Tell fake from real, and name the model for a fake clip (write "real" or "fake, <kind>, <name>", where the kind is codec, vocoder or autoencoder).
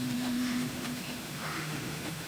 fake, autoencoder, DAC-VAE